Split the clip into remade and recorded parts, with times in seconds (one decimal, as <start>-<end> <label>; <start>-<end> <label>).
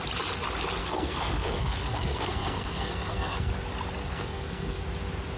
0.0-0.8 recorded; 0.8-3.5 remade; 3.5-4.0 recorded; 4.0-4.8 remade; 4.8-5.4 recorded